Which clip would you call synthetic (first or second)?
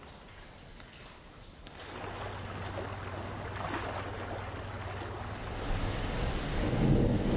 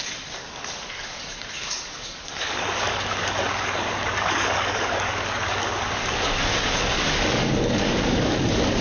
second